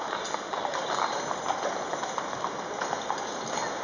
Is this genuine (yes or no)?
yes